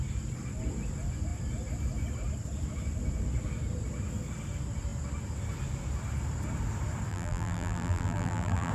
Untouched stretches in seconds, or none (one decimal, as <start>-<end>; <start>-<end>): 0.0-7.1